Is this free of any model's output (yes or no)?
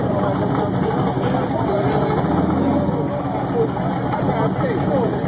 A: yes